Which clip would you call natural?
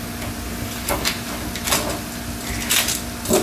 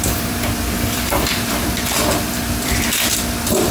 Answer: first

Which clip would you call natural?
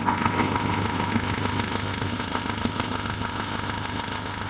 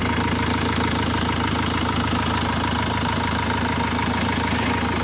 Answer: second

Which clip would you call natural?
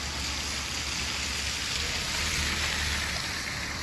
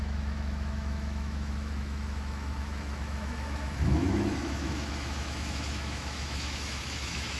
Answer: first